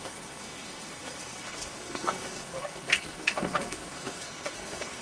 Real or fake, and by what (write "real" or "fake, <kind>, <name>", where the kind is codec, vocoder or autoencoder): fake, codec, SNAC